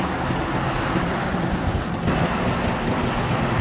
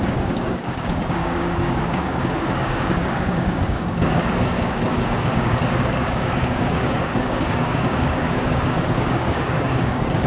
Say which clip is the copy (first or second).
second